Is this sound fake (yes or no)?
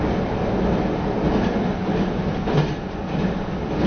no